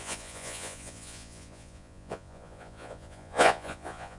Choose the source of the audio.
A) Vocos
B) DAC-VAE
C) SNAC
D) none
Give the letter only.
A